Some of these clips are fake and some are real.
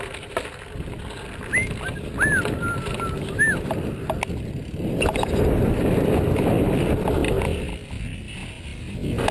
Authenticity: real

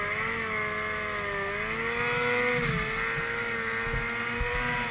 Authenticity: real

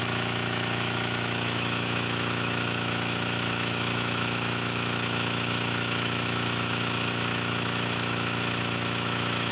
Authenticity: fake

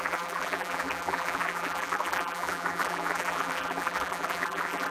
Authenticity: fake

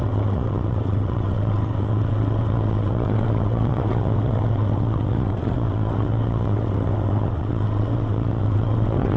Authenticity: fake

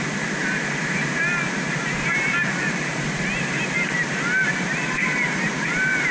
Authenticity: real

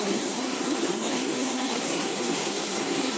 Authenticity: fake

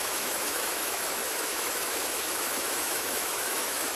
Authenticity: fake